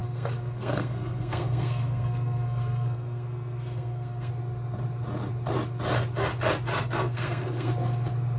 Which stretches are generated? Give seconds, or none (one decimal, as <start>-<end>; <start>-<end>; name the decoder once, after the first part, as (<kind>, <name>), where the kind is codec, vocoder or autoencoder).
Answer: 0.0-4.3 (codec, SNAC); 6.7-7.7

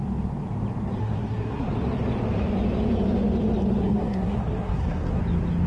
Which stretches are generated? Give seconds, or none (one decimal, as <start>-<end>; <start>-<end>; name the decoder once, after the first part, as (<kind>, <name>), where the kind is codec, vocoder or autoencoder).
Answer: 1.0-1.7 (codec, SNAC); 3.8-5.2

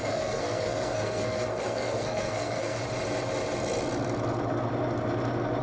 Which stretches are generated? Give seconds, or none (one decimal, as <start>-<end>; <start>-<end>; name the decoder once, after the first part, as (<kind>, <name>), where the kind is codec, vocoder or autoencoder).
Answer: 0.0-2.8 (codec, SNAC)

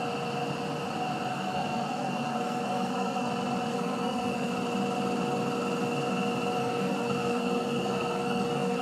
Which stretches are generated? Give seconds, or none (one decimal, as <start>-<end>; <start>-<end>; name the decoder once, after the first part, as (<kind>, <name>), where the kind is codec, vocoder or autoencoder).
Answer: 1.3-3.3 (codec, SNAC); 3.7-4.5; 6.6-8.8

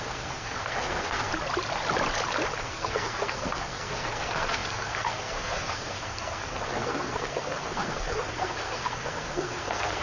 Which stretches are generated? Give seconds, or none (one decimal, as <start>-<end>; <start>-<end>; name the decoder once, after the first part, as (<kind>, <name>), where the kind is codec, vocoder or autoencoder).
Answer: 0.0-1.3 (codec, SNAC); 2.6-10.0

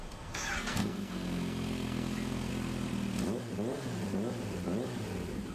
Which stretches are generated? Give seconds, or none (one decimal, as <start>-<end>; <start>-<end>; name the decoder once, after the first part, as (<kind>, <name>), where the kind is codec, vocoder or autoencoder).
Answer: 0.0-2.5 (codec, SNAC)

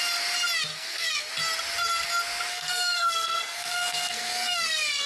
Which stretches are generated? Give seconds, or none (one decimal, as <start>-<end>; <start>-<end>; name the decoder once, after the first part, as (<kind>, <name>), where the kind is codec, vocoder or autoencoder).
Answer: 0.7-1.3 (codec, SNAC); 2.5-5.1

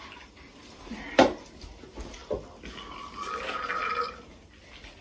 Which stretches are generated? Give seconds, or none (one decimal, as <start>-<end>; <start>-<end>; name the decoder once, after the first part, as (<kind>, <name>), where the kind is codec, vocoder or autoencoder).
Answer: none